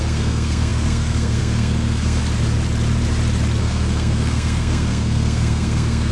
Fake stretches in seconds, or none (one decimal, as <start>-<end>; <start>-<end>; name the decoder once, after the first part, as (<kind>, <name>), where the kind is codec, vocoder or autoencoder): 0.0-2.2 (codec, SNAC); 3.6-6.1